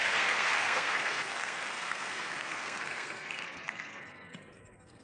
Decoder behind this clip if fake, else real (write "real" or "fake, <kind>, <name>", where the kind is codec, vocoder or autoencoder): fake, codec, SNAC